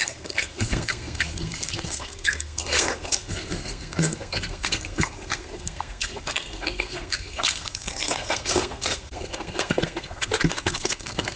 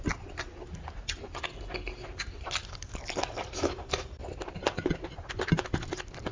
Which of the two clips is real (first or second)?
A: second